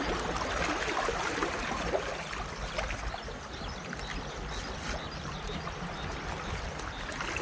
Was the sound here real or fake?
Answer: real